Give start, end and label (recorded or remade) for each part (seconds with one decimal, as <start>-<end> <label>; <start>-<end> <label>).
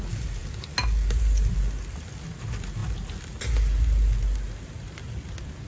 0.0-5.7 recorded